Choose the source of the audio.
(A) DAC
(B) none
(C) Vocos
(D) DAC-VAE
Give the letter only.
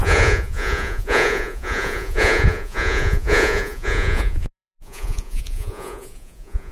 C